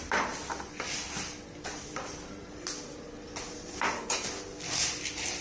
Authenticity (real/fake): real